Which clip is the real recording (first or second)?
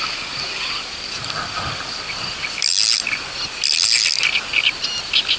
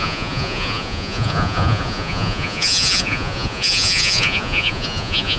first